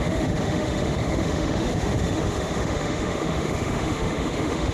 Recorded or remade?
remade